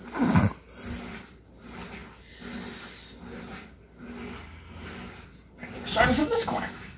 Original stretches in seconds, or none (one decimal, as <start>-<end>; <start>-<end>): 0.0-6.2